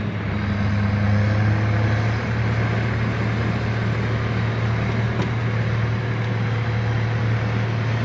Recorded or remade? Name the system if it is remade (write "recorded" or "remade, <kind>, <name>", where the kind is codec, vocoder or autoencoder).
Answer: recorded